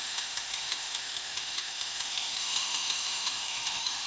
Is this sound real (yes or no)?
no